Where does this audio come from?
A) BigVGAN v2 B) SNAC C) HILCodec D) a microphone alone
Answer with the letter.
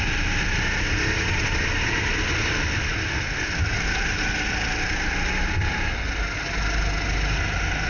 D